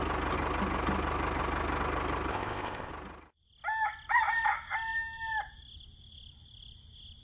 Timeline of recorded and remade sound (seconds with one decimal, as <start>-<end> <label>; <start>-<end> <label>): 0.0-2.3 recorded; 2.3-2.9 remade; 2.9-7.2 recorded